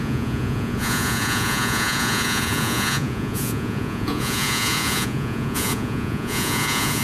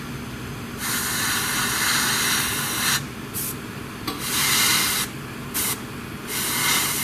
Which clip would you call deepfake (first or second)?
first